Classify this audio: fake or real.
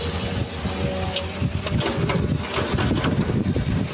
real